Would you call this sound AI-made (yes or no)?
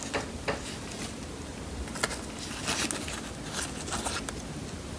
no